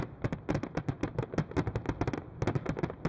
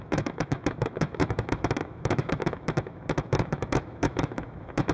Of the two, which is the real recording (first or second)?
first